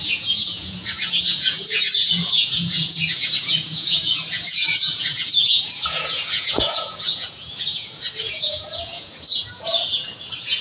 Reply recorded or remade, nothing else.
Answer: remade